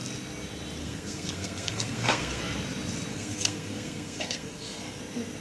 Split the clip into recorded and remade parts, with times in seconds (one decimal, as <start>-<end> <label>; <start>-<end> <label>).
0.0-0.8 recorded; 0.8-2.4 remade; 2.4-3.1 recorded; 3.1-5.0 remade; 5.0-5.4 recorded